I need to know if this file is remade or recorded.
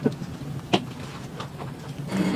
recorded